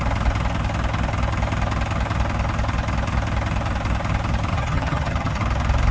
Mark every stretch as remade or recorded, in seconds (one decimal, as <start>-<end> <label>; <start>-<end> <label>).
0.0-4.5 recorded; 4.5-5.4 remade; 5.4-5.9 recorded